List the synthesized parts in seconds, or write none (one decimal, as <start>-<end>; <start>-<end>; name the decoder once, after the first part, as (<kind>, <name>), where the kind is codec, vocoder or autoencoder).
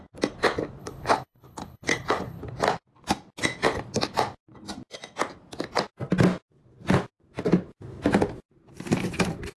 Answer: 0.8-2.4 (codec, HILCodec)